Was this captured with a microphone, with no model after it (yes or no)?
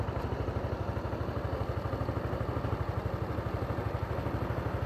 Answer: yes